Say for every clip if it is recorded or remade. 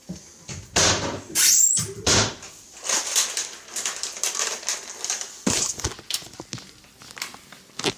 recorded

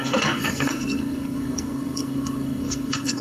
remade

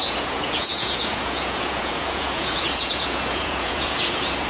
remade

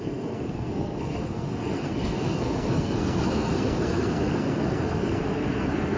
remade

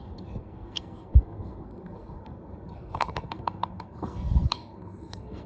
remade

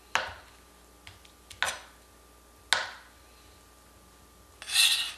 recorded